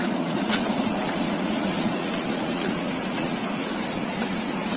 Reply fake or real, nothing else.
fake